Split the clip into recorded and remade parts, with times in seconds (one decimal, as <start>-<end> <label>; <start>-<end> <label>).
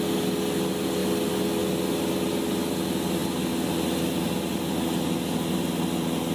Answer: 0.0-6.3 recorded